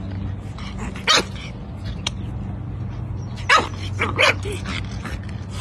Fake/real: real